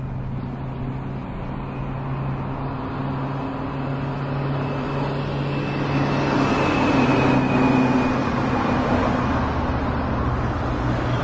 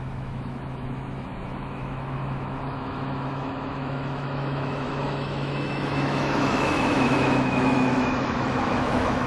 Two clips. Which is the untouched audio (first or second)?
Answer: first